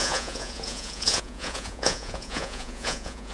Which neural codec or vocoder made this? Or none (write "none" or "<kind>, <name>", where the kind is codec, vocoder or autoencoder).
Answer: vocoder, Vocos